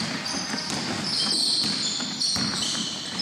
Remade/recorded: recorded